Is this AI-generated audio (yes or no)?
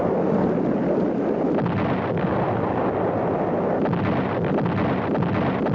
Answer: no